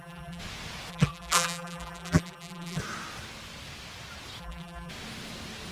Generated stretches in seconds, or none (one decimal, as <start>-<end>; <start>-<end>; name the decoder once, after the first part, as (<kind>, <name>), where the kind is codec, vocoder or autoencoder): 0.0-0.4 (vocoder, BigVGAN v2); 0.9-2.8; 4.4-4.9